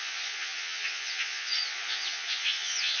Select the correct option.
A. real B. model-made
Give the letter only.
B